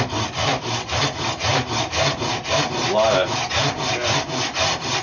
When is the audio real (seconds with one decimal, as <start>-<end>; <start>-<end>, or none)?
0.0-5.0

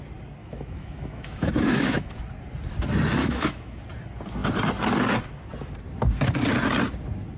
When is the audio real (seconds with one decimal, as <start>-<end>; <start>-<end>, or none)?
0.0-0.4; 2.2-3.2; 3.8-7.4

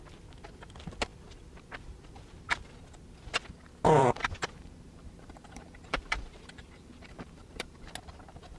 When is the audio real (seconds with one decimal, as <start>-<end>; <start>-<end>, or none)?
0.0-4.0; 7.9-8.6